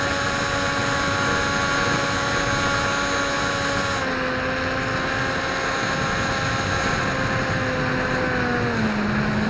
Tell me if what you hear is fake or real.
real